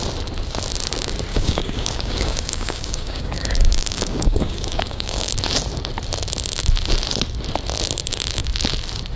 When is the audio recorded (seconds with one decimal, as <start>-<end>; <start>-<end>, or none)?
0.0-1.3; 5.3-9.2